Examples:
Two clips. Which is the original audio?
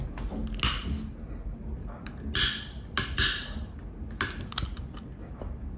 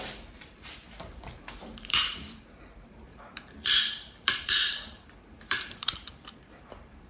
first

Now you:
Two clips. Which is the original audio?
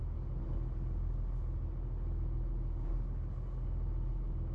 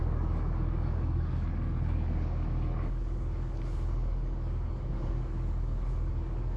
first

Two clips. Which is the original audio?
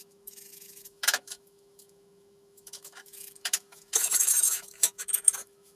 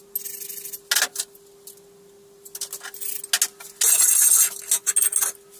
second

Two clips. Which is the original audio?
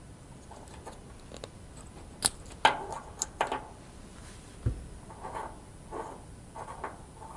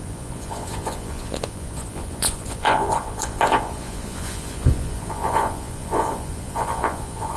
first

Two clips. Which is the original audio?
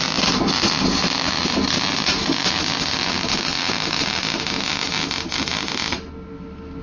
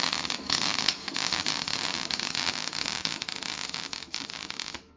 first